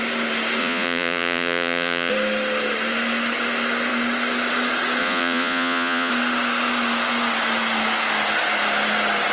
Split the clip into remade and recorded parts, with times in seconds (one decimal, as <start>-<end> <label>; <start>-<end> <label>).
0.0-0.6 recorded; 0.6-2.1 remade; 2.1-5.0 recorded; 5.0-6.1 remade; 6.1-9.3 recorded

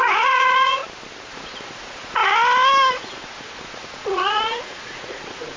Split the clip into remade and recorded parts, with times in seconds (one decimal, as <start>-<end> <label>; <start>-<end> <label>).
0.0-0.8 remade; 0.8-1.3 recorded; 1.3-2.2 remade; 2.2-2.9 recorded; 2.9-5.6 remade

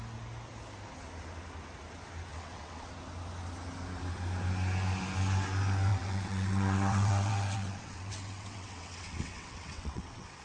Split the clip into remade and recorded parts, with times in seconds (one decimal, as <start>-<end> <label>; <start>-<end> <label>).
0.0-2.3 recorded; 2.3-2.9 remade; 2.9-5.9 recorded; 5.9-10.4 remade

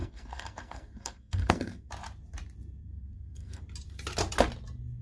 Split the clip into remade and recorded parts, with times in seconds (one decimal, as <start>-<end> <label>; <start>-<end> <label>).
0.0-1.9 remade; 1.9-2.8 recorded; 2.8-3.6 remade; 3.6-5.0 recorded